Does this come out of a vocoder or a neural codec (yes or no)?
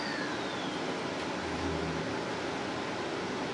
no